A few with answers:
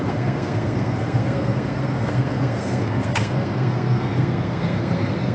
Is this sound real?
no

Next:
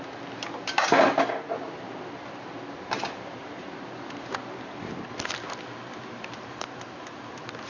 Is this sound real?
yes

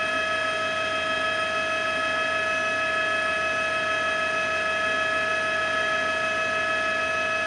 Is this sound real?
yes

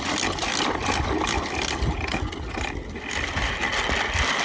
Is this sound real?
yes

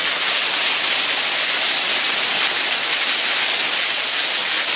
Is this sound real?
yes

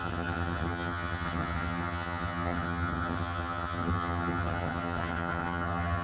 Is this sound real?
no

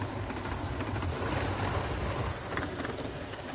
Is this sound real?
yes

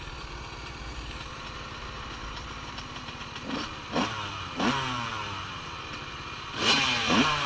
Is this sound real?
no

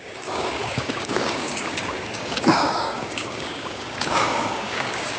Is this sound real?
no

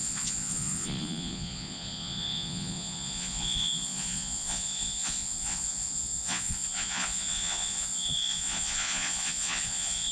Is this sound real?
no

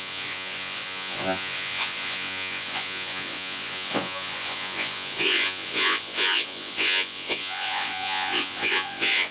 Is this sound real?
no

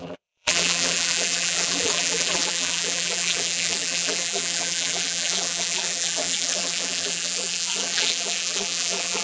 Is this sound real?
no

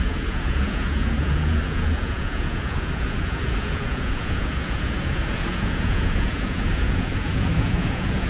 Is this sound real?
no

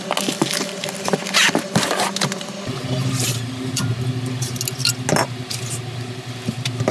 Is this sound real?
yes